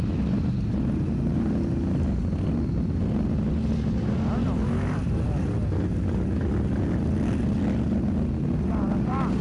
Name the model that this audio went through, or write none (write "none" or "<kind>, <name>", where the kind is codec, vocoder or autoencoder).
none